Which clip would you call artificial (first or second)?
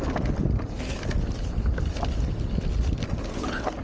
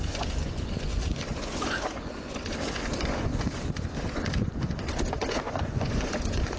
second